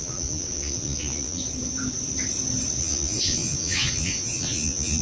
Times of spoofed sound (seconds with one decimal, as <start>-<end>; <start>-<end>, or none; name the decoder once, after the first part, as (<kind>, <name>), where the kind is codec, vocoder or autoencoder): 0.0-1.4 (vocoder, Vocos); 2.8-5.0

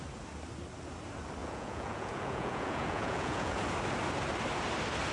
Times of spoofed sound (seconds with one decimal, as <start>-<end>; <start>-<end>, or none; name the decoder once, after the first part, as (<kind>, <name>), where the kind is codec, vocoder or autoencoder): 1.4-3.6 (vocoder, Vocos)

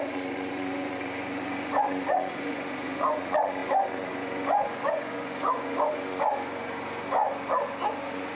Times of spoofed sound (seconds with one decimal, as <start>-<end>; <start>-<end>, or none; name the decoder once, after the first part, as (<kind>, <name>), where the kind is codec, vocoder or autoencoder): 0.0-7.2 (vocoder, Vocos); 7.9-8.4

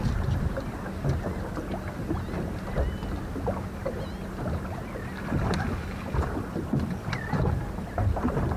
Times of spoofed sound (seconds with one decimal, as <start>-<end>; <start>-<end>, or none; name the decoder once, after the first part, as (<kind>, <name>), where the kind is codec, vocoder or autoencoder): none

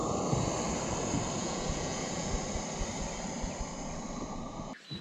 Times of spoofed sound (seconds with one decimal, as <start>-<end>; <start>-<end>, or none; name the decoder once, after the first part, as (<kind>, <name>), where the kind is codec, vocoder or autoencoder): 1.4-2.3 (vocoder, Vocos)

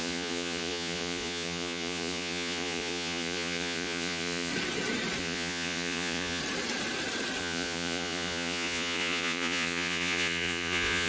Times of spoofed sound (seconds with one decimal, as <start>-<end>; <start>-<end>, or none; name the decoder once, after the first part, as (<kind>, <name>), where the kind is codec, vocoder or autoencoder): 0.0-4.5 (vocoder, Vocos); 5.2-6.4; 7.4-11.1